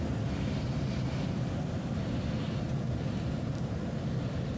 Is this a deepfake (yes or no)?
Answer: no